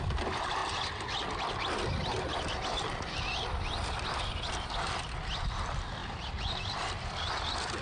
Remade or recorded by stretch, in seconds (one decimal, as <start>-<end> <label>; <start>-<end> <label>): 0.0-7.8 recorded